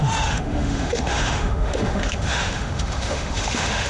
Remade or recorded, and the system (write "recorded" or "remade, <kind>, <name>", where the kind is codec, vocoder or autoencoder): remade, autoencoder, DAC-VAE